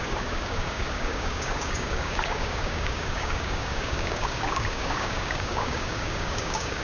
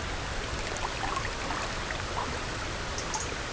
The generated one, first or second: first